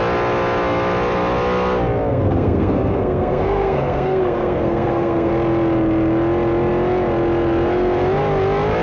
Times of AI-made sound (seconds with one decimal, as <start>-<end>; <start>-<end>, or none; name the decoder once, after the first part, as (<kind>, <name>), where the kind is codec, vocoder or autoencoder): 2.1-5.3 (codec, SNAC)